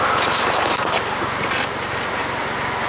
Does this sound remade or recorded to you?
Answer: recorded